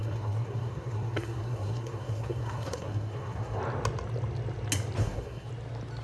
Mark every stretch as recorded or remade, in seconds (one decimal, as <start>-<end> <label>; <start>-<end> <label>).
0.0-3.6 remade; 3.6-5.0 recorded; 5.0-5.5 remade; 5.5-6.0 recorded